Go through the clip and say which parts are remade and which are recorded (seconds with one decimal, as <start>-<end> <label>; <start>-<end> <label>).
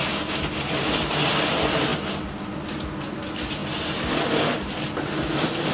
0.0-5.7 recorded